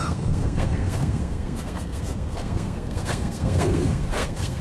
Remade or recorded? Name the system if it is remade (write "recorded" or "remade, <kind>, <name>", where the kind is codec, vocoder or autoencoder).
remade, codec, SNAC